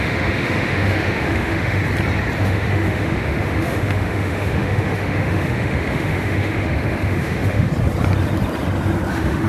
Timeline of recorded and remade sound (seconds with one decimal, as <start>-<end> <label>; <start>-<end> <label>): 0.0-1.8 remade; 1.8-2.4 recorded; 2.4-7.7 remade; 7.7-9.1 recorded; 9.1-9.5 remade